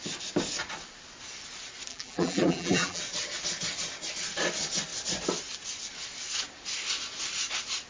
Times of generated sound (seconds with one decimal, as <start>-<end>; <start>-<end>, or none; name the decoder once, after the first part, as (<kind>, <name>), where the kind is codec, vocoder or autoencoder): 1.9-3.0 (vocoder, BigVGAN v2)

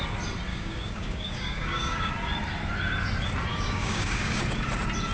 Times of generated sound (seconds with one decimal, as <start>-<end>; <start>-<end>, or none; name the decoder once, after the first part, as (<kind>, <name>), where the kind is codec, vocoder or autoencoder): 0.5-2.1 (codec, DAC); 3.5-4.4

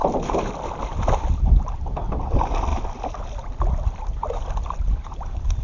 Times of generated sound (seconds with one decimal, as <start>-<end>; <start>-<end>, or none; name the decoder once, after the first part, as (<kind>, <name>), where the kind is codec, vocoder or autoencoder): none

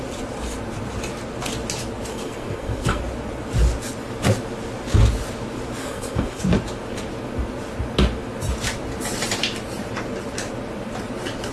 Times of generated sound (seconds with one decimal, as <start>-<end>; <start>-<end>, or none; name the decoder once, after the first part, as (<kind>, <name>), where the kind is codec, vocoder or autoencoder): 2.1-3.0 (codec, SNAC); 5.8-6.4

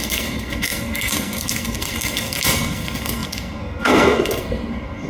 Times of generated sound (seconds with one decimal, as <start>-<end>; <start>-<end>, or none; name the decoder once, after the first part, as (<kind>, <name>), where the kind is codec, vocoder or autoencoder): 0.0-5.1 (codec, SNAC)

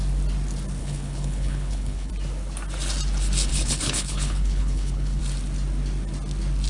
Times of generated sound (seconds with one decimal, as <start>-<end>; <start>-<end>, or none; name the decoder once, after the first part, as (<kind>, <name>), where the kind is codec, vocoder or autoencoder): 0.8-2.1 (codec, HILCodec); 3.5-5.2

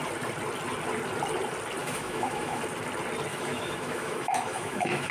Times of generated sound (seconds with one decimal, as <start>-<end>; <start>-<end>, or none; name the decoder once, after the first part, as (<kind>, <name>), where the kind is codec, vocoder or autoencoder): 1.8-2.6 (autoencoder, DAC-VAE); 3.3-5.1